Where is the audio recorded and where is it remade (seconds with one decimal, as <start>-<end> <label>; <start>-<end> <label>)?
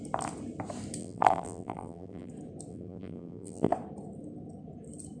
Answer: 0.0-1.0 recorded; 1.0-2.3 remade; 2.3-2.7 recorded; 2.7-3.7 remade; 3.7-5.2 recorded